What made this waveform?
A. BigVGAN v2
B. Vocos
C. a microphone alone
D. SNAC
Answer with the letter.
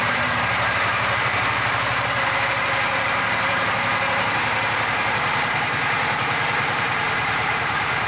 A